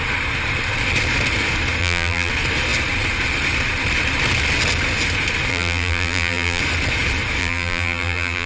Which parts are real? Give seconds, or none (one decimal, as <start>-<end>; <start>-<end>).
0.0-1.8; 2.3-5.5; 6.6-7.4